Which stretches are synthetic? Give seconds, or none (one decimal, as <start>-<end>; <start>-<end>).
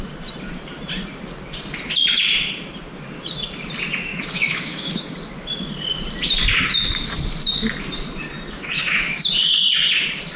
4.1-5.1; 8.6-9.3